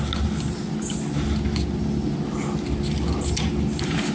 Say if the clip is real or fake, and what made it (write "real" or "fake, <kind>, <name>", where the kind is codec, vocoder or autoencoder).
real